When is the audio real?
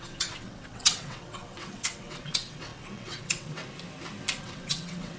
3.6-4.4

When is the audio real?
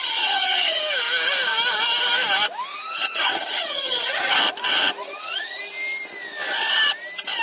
0.8-2.7; 4.4-5.0; 5.6-7.4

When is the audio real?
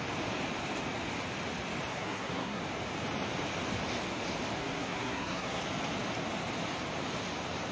0.0-1.9; 2.6-4.6; 5.6-7.7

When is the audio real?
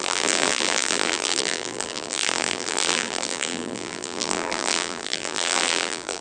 none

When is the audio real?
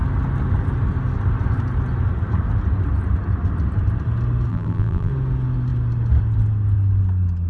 0.0-4.5; 5.1-7.5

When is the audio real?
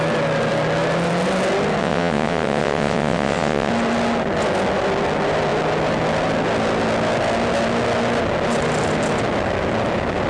0.0-1.8; 3.7-10.3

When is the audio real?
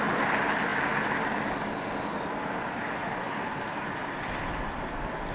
0.0-5.3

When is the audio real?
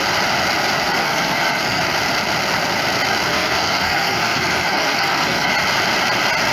0.0-0.9; 1.8-3.3; 5.5-6.5